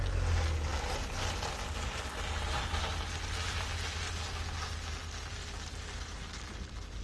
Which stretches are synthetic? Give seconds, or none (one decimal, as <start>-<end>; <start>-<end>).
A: none